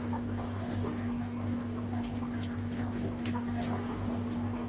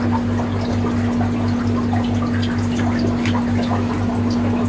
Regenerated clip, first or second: first